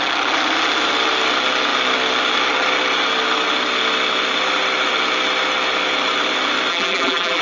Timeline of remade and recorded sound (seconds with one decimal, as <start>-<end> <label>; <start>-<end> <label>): 0.0-6.7 recorded; 6.7-7.4 remade